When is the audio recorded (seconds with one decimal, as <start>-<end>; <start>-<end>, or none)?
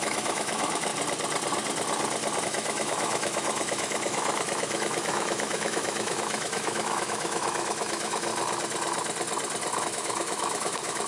0.9-2.4; 8.3-9.8